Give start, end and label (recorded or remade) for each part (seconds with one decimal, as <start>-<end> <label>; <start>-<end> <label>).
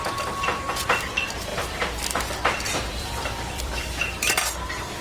0.0-1.5 recorded; 1.5-4.5 remade; 4.5-5.0 recorded